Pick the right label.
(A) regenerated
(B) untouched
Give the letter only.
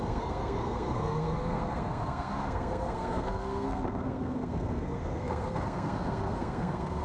A